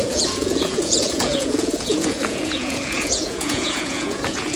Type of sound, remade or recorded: remade